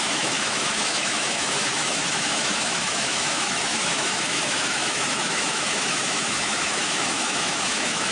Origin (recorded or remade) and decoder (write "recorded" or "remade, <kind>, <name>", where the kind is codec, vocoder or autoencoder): remade, autoencoder, DAC-VAE